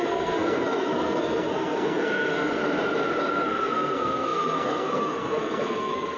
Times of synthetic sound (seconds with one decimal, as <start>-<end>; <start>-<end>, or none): 0.0-2.6; 3.3-6.2